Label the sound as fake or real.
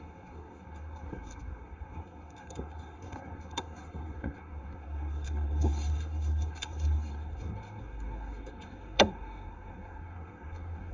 fake